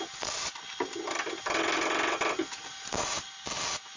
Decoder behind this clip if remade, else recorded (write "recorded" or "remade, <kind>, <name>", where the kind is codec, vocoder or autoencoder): recorded